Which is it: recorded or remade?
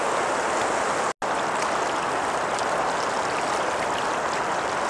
recorded